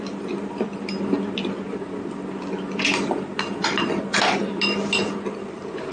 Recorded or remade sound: recorded